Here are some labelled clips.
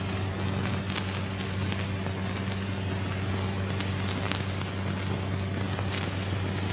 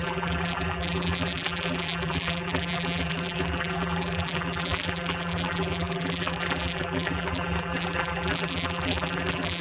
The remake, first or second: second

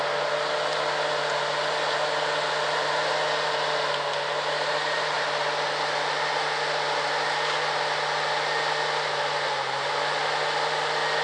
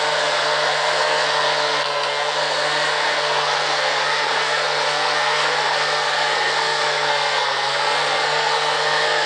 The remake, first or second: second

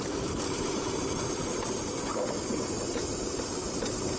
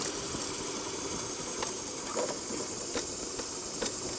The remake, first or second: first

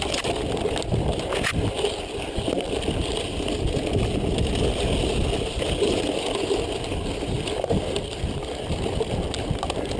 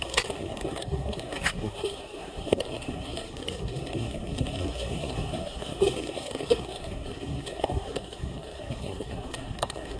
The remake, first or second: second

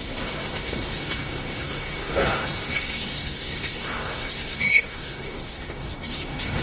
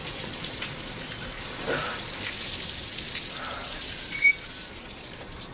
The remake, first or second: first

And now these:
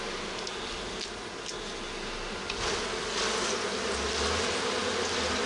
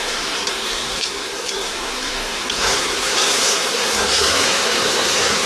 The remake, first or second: second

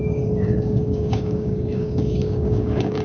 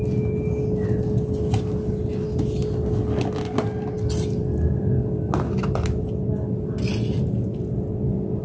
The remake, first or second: first